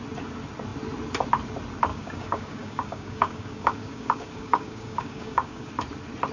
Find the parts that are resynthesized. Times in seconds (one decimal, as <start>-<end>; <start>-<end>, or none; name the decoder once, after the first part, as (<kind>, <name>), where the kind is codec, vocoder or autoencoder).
1.9-5.7 (codec, DAC)